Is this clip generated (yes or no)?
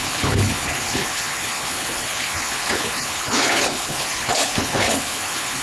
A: yes